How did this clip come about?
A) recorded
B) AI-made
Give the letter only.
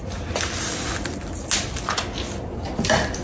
A